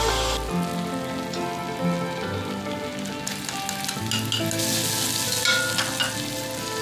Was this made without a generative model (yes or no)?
yes